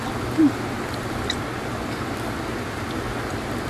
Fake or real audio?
real